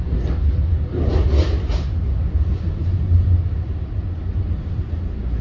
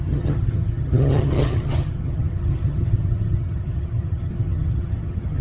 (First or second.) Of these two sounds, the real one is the first